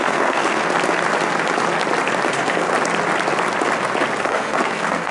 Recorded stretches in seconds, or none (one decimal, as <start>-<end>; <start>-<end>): 0.6-2.3; 2.7-4.2